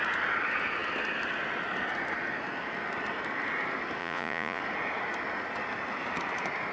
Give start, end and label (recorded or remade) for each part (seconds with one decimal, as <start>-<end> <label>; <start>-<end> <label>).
0.0-4.0 recorded; 4.0-4.6 remade; 4.6-6.7 recorded

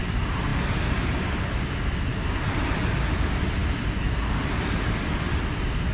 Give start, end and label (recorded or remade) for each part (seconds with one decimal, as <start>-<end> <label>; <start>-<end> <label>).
0.0-5.9 recorded

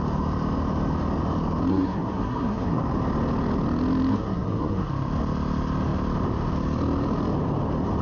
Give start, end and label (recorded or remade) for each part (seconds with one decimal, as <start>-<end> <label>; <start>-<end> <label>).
0.0-1.7 recorded; 1.7-2.8 remade; 2.8-4.1 recorded; 4.1-4.9 remade; 4.9-8.0 recorded

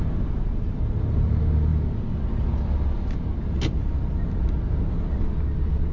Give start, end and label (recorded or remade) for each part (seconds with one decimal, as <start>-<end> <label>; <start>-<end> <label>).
0.0-5.9 recorded

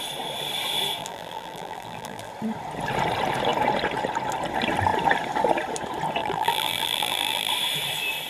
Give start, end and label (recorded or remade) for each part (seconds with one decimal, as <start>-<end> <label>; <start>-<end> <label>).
0.0-1.0 recorded; 1.0-2.3 remade; 2.3-6.2 recorded; 6.2-7.5 remade; 7.5-8.3 recorded

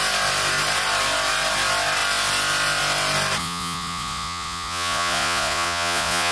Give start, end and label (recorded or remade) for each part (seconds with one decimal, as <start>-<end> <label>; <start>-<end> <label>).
0.0-3.4 recorded; 3.4-6.3 remade

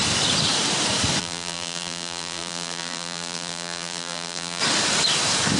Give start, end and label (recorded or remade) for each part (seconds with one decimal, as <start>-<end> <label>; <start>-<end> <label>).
0.0-1.2 recorded; 1.2-4.6 remade; 4.6-5.6 recorded